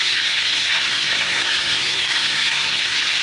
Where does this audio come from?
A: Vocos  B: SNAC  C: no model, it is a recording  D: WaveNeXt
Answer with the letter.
B